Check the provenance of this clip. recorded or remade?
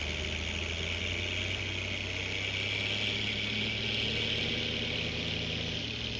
recorded